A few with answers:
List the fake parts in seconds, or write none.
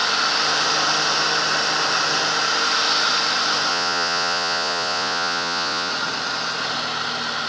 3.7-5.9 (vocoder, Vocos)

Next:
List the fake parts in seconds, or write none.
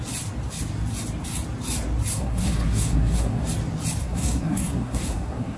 2.1-3.4 (codec, SNAC); 4.0-5.6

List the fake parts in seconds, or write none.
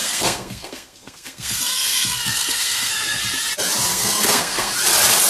0.0-3.2 (codec, SNAC); 3.9-4.7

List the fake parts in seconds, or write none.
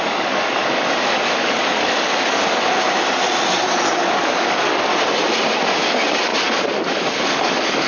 0.0-2.7 (codec, DAC); 4.1-4.9; 5.8-6.3; 6.9-7.9